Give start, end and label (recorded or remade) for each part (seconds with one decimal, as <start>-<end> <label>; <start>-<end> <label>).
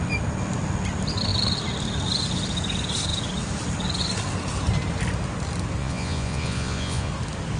0.0-5.8 recorded; 5.8-7.1 remade; 7.1-7.6 recorded